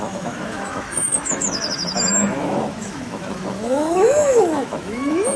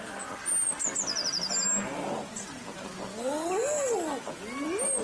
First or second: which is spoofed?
first